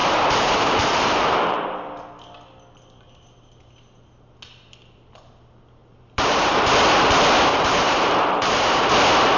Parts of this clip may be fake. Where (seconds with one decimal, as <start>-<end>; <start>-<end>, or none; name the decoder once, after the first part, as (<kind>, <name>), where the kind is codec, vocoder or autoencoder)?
0.0-2.1 (vocoder, BigVGAN v2); 5.8-6.7; 7.5-8.9